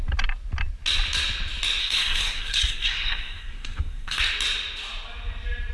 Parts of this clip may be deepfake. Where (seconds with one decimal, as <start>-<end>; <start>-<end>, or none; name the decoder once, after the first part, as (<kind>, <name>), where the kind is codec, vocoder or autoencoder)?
1.8-4.2 (codec, SNAC)